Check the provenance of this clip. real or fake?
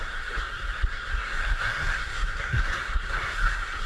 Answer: fake